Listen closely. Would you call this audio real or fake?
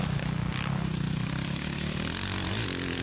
real